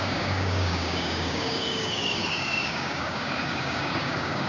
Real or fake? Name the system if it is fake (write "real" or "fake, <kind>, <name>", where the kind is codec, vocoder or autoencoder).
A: fake, codec, DAC